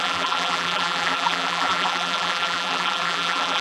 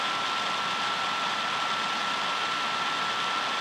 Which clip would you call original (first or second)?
second